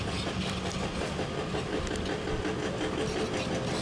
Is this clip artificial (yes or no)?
no